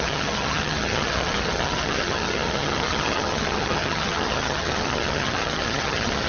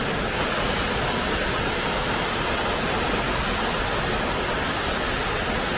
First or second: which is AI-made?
first